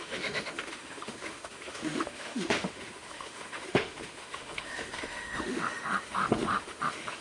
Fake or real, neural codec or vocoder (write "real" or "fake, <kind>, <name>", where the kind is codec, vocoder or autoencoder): fake, autoencoder, DAC-VAE